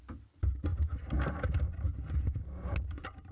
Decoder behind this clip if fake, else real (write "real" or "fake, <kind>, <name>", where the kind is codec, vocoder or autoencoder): real